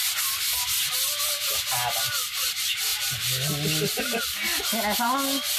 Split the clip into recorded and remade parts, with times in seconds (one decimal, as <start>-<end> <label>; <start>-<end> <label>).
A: 0.0-5.6 recorded